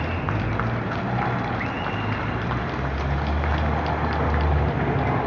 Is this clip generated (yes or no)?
no